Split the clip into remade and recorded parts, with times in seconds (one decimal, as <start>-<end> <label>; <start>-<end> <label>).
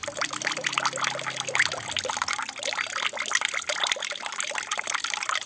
0.0-5.5 recorded